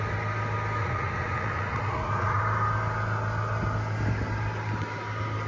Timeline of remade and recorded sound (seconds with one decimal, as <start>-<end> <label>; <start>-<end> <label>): 0.0-0.8 recorded; 0.8-2.4 remade; 2.4-5.5 recorded